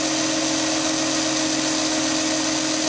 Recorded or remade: recorded